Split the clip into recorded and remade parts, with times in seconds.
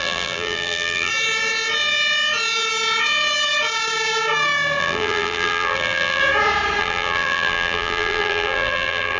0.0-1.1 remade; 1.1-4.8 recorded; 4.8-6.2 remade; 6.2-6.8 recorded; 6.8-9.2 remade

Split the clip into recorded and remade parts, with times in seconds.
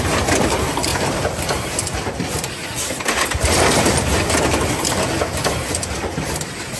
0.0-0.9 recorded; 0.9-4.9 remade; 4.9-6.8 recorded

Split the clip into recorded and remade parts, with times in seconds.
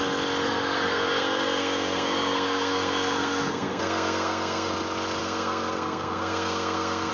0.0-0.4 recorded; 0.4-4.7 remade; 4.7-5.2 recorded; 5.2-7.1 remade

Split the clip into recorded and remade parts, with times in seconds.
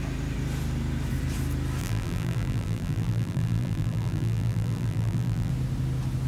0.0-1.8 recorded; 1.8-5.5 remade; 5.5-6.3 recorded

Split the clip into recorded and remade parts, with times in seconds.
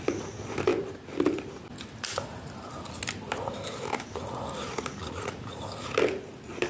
0.0-5.0 recorded; 5.0-5.6 remade; 5.6-6.7 recorded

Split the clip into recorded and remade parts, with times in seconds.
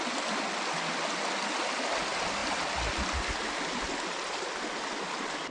0.0-5.5 recorded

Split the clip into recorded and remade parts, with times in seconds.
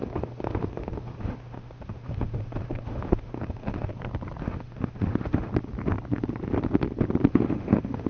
0.0-3.9 remade; 3.9-4.4 recorded; 4.4-5.5 remade; 5.5-7.3 recorded; 7.3-8.1 remade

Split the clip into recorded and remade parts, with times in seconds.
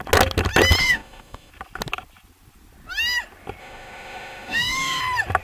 0.0-0.8 recorded; 0.8-1.5 remade; 1.5-3.6 recorded; 3.6-5.0 remade; 5.0-5.4 recorded